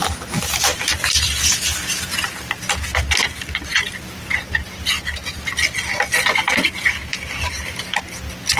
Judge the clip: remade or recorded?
recorded